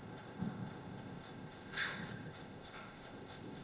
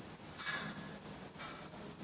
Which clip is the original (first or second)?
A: second